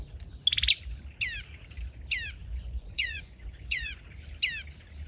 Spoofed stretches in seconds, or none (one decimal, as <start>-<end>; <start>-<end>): 2.4-4.0